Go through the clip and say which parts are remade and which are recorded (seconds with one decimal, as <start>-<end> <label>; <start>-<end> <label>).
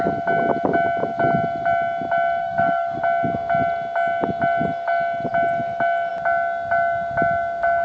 0.0-2.4 recorded; 2.4-3.0 remade; 3.0-7.8 recorded